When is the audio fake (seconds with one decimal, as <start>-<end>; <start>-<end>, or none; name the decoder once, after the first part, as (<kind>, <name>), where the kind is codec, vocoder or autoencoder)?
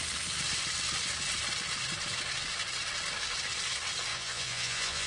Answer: 4.1-5.1 (vocoder, Vocos)